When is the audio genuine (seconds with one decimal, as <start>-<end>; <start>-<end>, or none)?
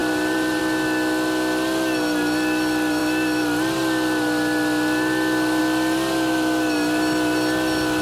0.6-8.0